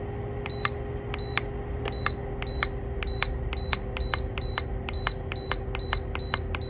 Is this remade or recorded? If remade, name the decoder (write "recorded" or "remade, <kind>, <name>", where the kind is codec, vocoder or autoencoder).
recorded